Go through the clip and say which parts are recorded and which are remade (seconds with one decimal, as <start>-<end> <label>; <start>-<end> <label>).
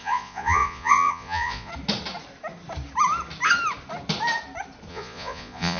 0.0-1.7 remade; 1.7-4.9 recorded; 4.9-5.8 remade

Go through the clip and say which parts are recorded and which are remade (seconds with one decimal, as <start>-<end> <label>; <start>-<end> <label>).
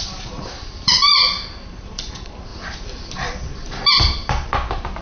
0.0-1.2 remade; 1.2-1.7 recorded; 1.7-5.0 remade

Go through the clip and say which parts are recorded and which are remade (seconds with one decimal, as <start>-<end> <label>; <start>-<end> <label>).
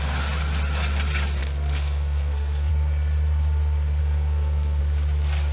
0.0-1.4 recorded; 1.4-2.7 remade; 2.7-4.0 recorded; 4.0-4.8 remade; 4.8-5.5 recorded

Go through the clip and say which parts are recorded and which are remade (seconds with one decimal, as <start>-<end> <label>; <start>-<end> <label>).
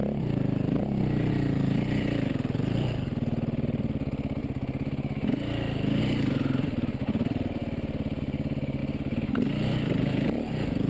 0.0-0.8 remade; 0.8-1.3 recorded; 1.3-4.4 remade; 4.4-6.0 recorded; 6.0-10.9 remade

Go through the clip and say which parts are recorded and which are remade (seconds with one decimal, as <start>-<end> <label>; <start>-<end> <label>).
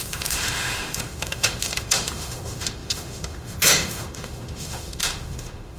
0.0-5.8 remade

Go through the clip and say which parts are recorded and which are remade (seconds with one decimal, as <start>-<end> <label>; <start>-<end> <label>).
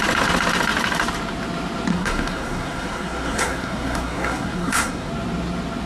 0.0-1.9 recorded; 1.9-5.1 remade; 5.1-5.9 recorded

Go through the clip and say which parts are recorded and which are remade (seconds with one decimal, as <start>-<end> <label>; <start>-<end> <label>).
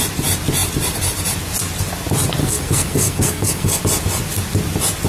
0.0-2.4 recorded; 2.4-3.8 remade; 3.8-5.1 recorded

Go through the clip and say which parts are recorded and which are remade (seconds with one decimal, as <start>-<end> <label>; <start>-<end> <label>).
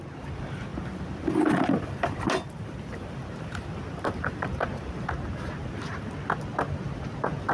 0.0-0.7 recorded; 0.7-5.1 remade; 5.1-7.5 recorded